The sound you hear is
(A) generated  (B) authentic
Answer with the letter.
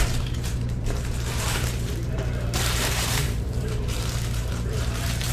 A